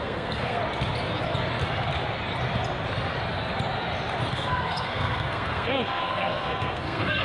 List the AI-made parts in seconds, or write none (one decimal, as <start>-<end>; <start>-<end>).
0.0-0.6; 4.3-7.2